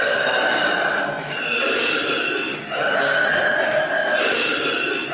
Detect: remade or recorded remade